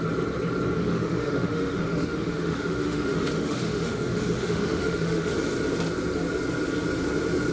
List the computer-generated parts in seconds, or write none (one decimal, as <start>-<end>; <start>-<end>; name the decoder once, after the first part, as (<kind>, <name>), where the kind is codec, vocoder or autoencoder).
0.8-5.3 (autoencoder, DAC-VAE)